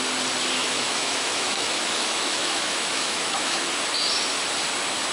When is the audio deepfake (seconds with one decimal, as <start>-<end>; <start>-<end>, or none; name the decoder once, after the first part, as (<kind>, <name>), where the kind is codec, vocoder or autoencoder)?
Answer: 0.6-3.7 (autoencoder, DAC-VAE)